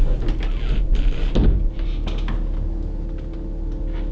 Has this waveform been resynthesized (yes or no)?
no